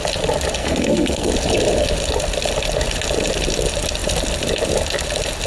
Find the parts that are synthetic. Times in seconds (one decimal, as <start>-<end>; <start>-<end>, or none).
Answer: 0.6-1.3